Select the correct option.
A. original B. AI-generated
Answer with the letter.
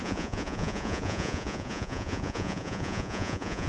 B